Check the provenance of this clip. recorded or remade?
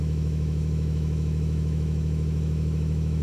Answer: remade